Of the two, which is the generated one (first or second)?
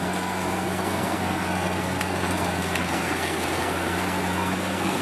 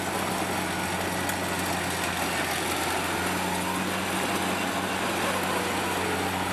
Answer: first